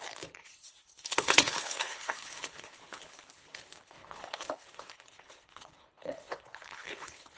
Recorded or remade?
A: remade